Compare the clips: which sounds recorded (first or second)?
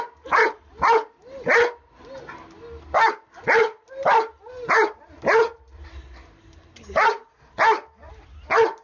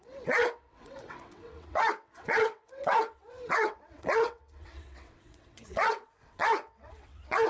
first